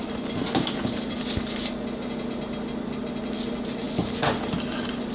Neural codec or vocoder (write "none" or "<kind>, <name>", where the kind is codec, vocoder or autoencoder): none